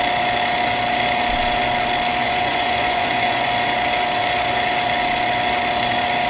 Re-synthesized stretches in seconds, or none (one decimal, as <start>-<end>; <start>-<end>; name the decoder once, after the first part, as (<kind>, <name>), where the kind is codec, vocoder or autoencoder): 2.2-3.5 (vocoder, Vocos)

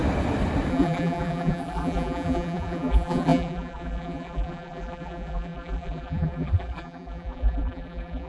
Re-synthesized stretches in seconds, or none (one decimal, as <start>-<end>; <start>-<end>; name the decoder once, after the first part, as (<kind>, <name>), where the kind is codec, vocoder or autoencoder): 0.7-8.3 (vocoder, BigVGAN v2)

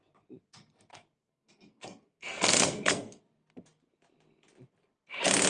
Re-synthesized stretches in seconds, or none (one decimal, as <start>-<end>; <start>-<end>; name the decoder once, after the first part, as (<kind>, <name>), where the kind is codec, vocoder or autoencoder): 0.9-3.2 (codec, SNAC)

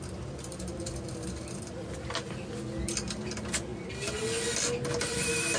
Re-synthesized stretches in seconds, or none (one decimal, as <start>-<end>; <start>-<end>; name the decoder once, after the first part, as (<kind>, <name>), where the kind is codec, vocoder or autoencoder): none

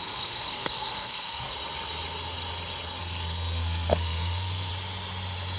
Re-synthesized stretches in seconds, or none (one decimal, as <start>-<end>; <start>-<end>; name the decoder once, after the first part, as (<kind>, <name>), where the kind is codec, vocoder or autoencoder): 0.0-1.5 (codec, SNAC); 3.0-4.7

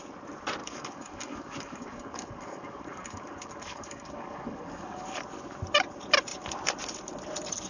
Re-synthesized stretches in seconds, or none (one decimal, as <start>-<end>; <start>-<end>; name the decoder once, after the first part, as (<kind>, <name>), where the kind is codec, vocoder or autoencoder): 0.6-5.2 (codec, DAC)

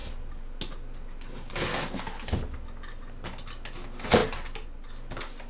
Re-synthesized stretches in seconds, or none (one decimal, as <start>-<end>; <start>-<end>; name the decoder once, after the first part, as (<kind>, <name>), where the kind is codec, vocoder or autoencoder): none